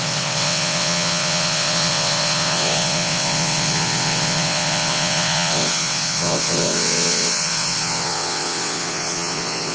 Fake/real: fake